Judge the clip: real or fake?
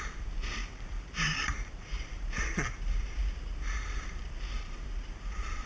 fake